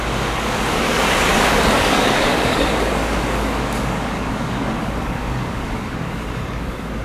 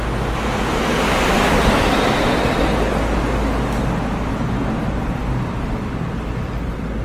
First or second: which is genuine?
second